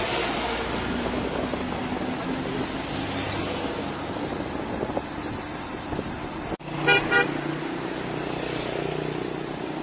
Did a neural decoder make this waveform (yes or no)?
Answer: no